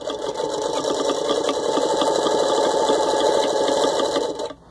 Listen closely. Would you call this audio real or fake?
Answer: real